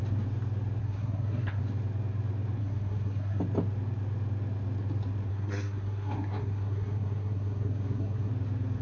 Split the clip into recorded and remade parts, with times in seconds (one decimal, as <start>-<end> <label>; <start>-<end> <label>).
0.0-0.8 recorded; 0.8-1.6 remade; 1.6-2.6 recorded; 2.6-3.4 remade; 3.4-5.3 recorded; 5.3-8.3 remade; 8.3-8.8 recorded